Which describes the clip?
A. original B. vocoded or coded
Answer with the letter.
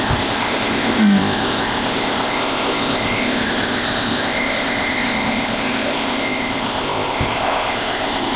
B